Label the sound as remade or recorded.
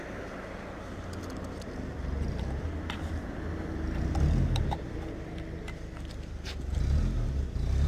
recorded